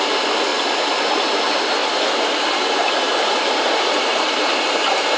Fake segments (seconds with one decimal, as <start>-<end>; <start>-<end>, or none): 1.8-5.2